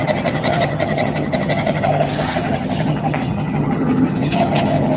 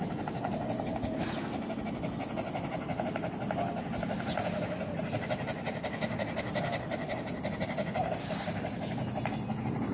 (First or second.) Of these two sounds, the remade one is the first